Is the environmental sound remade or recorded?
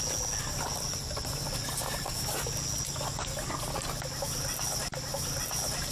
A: recorded